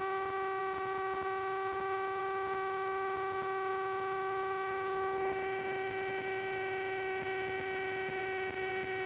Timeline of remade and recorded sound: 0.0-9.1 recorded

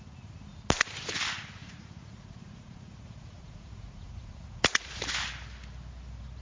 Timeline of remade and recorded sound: 0.0-1.6 recorded; 1.6-5.0 remade; 5.0-6.4 recorded